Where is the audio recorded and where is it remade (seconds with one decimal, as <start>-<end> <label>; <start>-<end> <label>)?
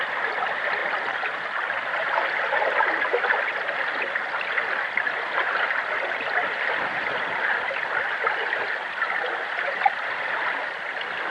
0.0-11.3 recorded